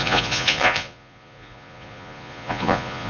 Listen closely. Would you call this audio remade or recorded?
remade